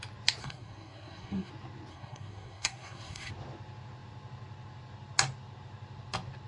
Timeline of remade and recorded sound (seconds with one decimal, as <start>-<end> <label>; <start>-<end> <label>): 0.0-0.4 recorded; 0.4-1.5 remade; 1.5-1.9 recorded; 1.9-3.3 remade; 3.3-6.5 recorded